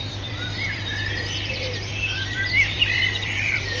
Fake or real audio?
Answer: fake